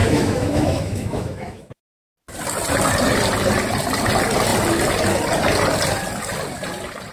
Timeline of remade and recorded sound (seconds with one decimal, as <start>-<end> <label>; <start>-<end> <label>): 0.0-1.8 remade; 1.8-7.1 recorded